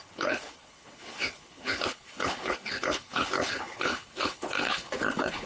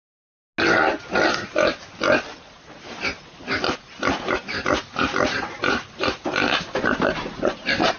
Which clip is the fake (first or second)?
first